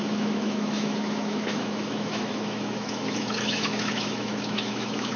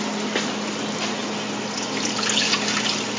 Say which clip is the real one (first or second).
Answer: second